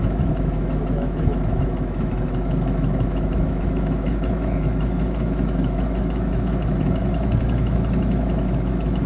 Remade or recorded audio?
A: remade